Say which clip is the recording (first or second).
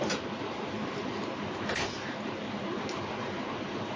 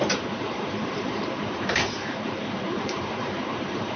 first